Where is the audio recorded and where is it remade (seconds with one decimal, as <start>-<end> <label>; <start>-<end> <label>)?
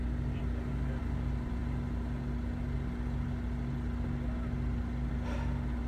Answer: 0.0-5.9 recorded